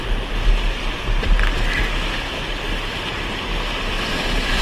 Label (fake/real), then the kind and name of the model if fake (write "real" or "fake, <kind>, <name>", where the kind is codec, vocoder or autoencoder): real